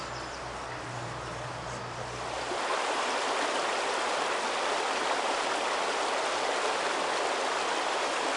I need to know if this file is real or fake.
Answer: real